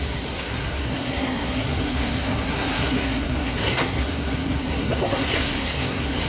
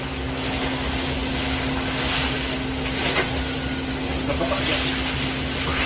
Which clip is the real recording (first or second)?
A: second